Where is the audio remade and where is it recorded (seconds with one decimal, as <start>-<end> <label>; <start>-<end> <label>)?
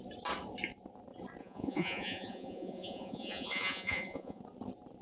0.0-1.4 recorded; 1.4-4.4 remade; 4.4-5.0 recorded